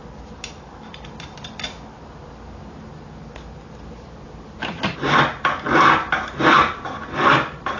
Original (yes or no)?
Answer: yes